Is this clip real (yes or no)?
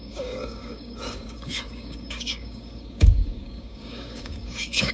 no